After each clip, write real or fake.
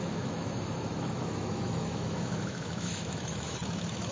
fake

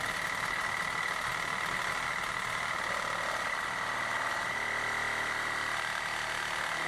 fake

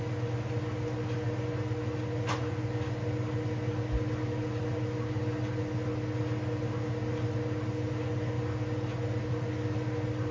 real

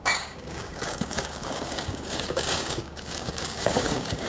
fake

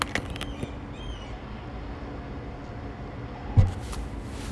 real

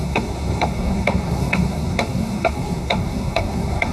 fake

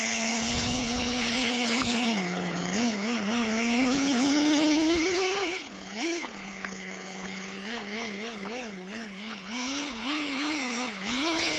fake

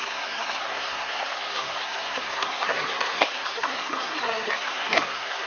fake